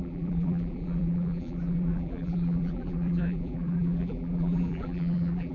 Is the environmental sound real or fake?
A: fake